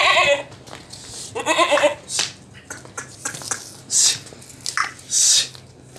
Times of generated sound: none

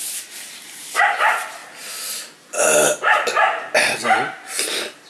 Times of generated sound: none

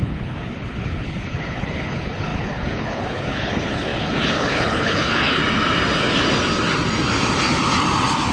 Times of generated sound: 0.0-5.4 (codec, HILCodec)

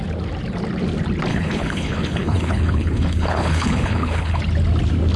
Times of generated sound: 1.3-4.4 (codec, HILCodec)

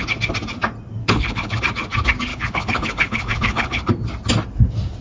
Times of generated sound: 1.0-1.6 (codec, HILCodec); 2.3-3.9